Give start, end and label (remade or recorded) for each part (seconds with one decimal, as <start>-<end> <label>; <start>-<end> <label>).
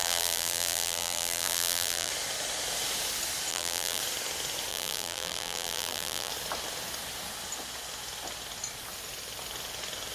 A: 0.0-2.1 remade; 2.1-3.5 recorded; 3.5-4.0 remade; 4.0-4.7 recorded; 4.7-6.3 remade; 6.3-10.1 recorded